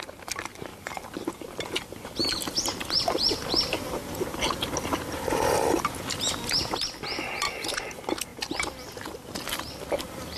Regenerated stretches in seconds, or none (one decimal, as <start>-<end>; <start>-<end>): none